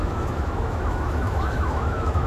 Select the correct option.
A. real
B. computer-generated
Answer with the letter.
B